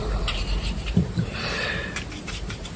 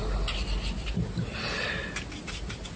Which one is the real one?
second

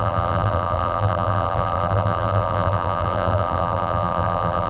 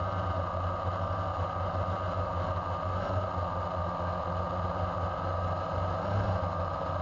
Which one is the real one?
second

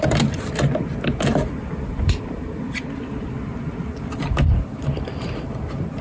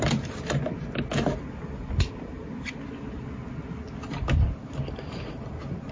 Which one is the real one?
second